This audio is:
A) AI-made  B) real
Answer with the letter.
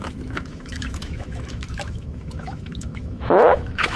A